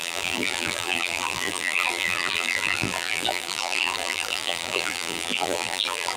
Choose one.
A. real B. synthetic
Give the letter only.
B